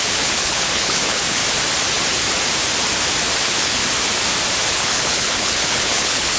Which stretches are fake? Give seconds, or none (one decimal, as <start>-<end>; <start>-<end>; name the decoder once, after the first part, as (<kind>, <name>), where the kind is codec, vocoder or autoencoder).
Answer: 0.0-1.4 (codec, HILCodec); 3.4-3.8; 4.7-6.4